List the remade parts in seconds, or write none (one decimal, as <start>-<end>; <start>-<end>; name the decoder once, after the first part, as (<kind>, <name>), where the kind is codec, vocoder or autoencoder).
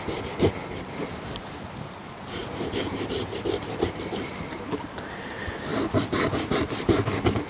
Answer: 0.6-5.1 (vocoder, BigVGAN v2); 5.7-7.1